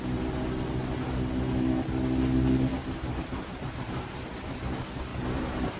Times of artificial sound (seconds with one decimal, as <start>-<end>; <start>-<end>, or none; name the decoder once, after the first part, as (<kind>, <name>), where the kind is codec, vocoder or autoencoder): 2.8-4.6 (vocoder, BigVGAN v2); 5.1-5.8